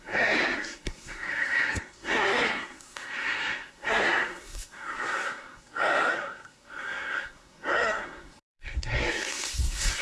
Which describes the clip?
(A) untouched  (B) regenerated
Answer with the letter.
B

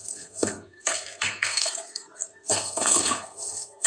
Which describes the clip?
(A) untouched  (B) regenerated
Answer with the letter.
B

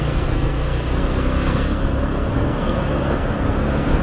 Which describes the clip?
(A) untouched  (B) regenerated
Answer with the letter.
B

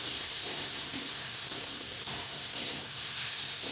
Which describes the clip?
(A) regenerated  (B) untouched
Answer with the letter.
A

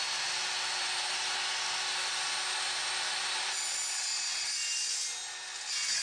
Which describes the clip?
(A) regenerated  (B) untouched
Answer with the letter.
B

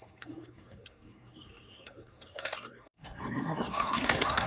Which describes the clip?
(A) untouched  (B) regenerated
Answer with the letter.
B